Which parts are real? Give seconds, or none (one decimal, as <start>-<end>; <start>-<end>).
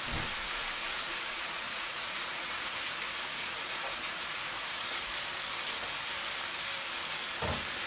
0.0-0.4; 5.1-7.9